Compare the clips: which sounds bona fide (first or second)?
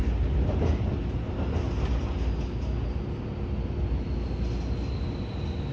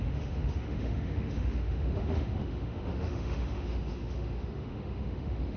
first